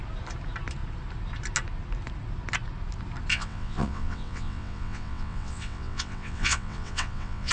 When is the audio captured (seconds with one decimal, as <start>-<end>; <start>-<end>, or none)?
0.0-3.3